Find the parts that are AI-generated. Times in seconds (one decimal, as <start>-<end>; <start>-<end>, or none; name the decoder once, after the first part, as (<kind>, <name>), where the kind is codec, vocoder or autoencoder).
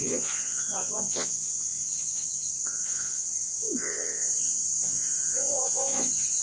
0.0-6.4 (vocoder, Vocos)